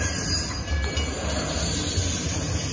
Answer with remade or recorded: recorded